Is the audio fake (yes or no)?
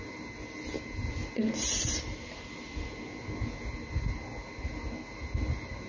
no